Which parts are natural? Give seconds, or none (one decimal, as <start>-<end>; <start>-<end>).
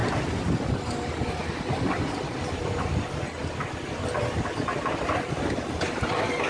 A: 0.0-6.5